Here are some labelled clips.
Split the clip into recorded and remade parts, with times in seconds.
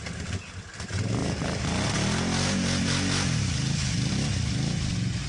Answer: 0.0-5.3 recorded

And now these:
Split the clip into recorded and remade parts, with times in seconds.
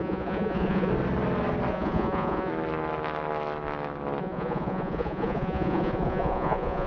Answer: 0.0-0.9 remade; 0.9-1.7 recorded; 1.7-2.5 remade; 2.5-4.2 recorded; 4.2-6.9 remade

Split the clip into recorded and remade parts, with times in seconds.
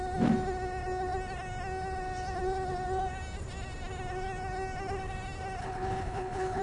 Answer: 0.0-5.6 recorded; 5.6-6.6 remade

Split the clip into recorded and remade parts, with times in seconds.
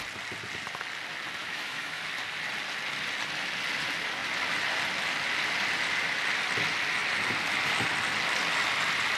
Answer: 0.0-1.4 recorded; 1.4-2.0 remade; 2.0-9.2 recorded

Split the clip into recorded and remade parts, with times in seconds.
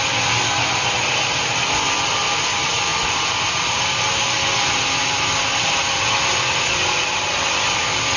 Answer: 0.0-8.2 recorded